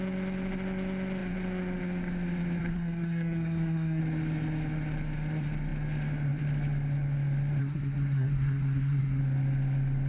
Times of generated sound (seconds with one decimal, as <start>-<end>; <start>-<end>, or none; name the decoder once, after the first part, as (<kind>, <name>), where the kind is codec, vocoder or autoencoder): 2.6-4.0 (codec, SNAC); 7.6-9.2